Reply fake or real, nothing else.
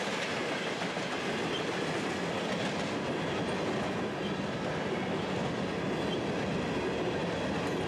real